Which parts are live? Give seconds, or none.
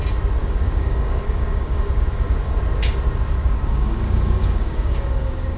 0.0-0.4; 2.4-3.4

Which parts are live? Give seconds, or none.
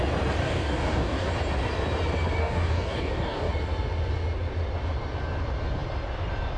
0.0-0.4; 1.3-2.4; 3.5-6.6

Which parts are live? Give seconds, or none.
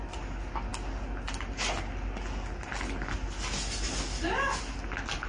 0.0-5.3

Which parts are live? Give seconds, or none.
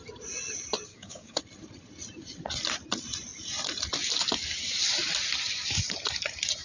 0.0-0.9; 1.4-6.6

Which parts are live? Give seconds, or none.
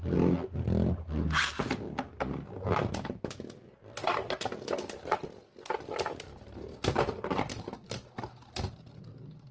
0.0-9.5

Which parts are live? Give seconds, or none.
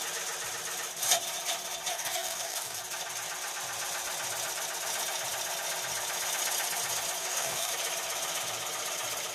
0.0-1.9; 2.8-7.2; 7.7-9.3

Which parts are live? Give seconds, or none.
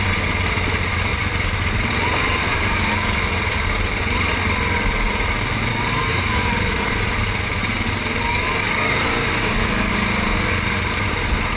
0.0-5.7; 6.8-8.3; 9.9-11.6